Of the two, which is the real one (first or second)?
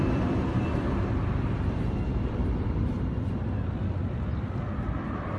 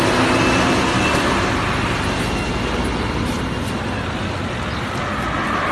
second